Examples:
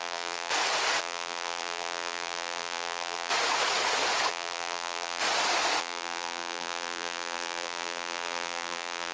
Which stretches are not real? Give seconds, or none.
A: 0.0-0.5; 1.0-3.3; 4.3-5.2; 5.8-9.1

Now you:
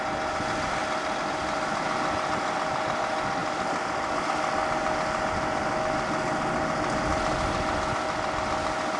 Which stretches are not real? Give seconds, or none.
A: none

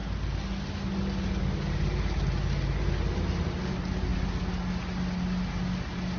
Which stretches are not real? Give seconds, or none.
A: none

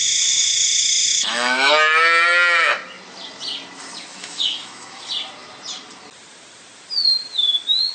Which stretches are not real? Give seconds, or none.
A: 0.0-1.7; 4.1-5.0

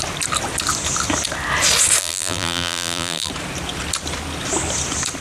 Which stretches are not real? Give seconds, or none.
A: 2.0-3.3